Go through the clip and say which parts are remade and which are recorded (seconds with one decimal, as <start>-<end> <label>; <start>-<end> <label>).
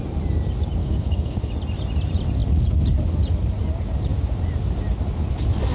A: 0.0-0.8 recorded; 0.8-1.5 remade; 1.5-5.7 recorded